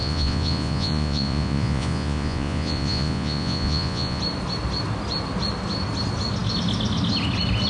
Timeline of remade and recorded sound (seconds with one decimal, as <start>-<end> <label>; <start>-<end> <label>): 0.0-4.2 remade; 4.2-7.7 recorded